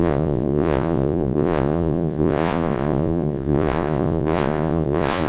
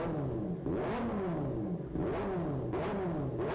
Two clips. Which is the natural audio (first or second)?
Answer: second